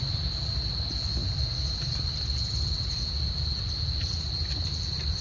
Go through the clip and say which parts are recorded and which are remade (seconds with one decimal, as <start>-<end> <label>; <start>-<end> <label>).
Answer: 0.0-5.2 recorded